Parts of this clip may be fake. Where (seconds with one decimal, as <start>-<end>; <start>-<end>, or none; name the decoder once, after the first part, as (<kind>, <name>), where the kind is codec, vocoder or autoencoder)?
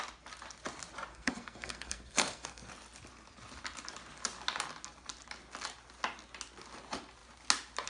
1.1-2.7 (codec, SNAC)